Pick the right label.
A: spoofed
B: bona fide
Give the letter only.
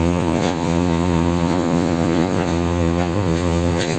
A